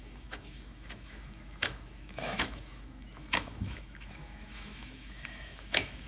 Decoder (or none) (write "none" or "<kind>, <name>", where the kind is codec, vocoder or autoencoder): autoencoder, DAC-VAE